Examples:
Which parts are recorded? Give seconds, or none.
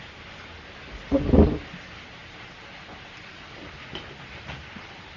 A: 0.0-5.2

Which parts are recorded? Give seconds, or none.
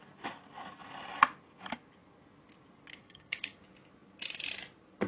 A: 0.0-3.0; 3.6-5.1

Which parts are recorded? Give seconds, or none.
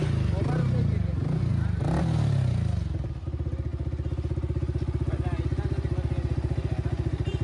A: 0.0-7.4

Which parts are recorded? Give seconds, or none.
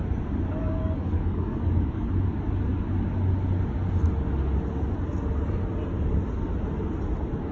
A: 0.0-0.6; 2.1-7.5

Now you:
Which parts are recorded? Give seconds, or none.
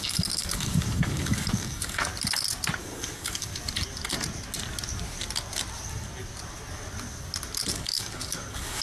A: 2.1-2.8; 3.5-7.7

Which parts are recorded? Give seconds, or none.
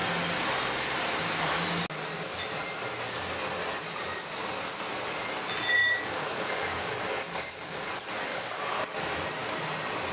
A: 0.0-5.8; 7.9-8.3; 8.8-10.1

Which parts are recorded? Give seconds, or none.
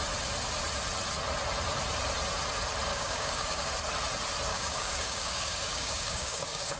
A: 0.0-2.9; 3.7-4.5